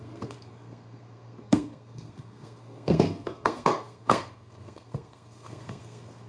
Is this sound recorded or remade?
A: remade